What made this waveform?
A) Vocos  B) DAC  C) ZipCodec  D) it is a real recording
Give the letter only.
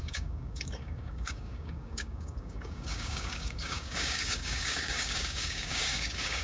B